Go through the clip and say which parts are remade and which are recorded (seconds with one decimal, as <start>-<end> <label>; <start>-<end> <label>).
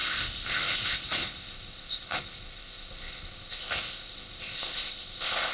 0.0-5.5 remade